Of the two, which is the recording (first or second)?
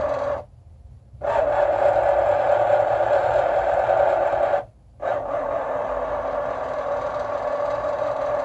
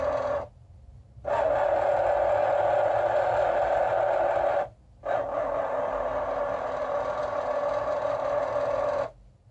second